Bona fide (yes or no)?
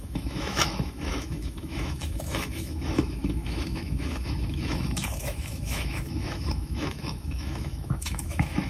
no